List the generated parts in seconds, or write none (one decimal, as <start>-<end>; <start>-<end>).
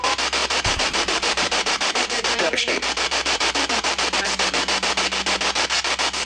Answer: 0.4-4.2